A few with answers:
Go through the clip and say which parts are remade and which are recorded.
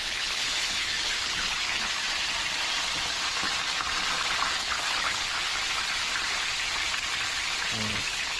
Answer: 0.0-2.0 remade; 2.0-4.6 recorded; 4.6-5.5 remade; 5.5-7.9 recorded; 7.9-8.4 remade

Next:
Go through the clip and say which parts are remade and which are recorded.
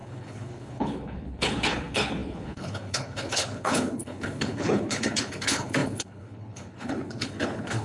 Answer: 0.0-7.8 remade